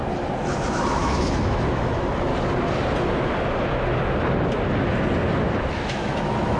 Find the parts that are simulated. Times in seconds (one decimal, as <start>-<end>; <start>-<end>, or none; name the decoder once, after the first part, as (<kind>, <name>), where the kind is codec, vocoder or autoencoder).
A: 0.7-2.3 (autoencoder, DAC-VAE); 5.7-6.6